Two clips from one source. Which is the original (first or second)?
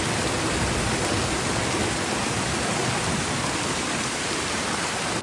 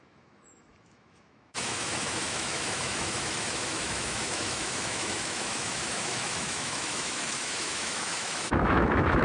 first